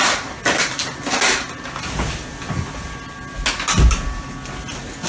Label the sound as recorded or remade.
recorded